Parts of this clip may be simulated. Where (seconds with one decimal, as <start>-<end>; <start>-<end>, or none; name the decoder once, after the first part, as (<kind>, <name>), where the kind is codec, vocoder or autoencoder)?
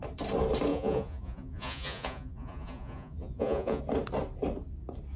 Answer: 0.7-3.8 (vocoder, Vocos)